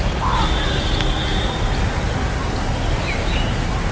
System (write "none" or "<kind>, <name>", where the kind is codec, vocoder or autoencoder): none